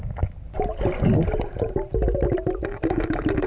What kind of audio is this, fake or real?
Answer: real